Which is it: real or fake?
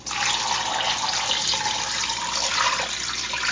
real